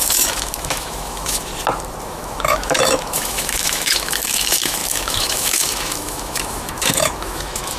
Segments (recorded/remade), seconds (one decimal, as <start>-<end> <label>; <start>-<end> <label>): 0.0-1.5 remade; 1.5-2.0 recorded; 2.0-7.8 remade

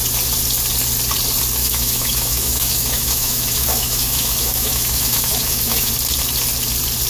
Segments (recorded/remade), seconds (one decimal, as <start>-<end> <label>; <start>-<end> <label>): 0.0-1.6 recorded; 1.6-5.9 remade; 5.9-7.1 recorded

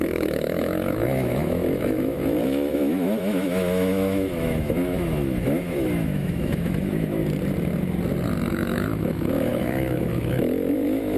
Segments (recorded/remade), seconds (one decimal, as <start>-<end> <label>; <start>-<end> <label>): 0.0-7.2 remade; 7.2-8.5 recorded; 8.5-11.2 remade